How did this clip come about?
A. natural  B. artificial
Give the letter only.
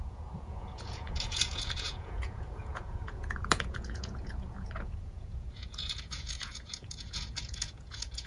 B